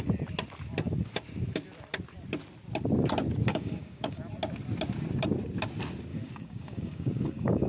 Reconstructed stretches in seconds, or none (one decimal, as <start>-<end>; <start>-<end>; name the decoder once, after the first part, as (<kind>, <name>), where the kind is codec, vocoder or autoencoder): 3.5-4.2 (codec, DAC); 6.1-7.7